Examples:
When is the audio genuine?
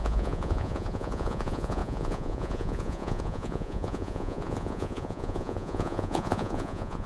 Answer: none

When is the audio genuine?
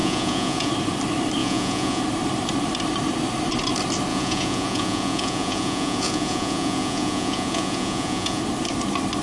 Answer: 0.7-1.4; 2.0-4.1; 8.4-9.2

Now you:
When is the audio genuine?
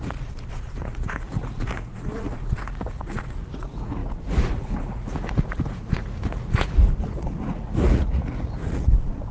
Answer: none